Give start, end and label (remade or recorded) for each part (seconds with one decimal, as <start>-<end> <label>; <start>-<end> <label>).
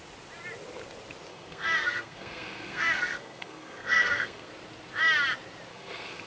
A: 0.0-1.3 recorded; 1.3-4.5 remade; 4.5-5.7 recorded; 5.7-6.3 remade